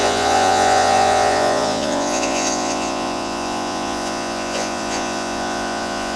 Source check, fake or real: fake